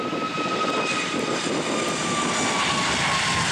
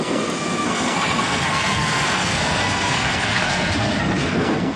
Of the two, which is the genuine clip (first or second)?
first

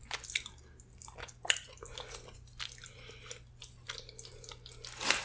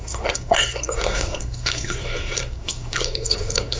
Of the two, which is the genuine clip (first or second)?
first